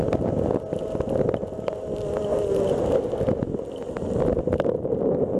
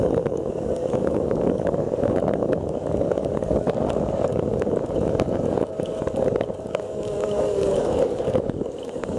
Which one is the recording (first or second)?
first